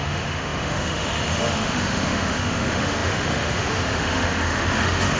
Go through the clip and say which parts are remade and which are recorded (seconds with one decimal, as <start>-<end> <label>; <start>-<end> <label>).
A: 0.0-5.2 remade

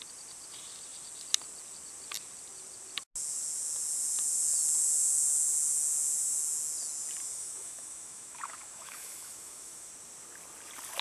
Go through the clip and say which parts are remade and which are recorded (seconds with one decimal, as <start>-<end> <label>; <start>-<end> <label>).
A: 0.0-7.2 recorded; 7.2-9.9 remade; 9.9-11.0 recorded